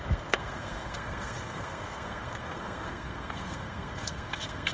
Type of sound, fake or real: fake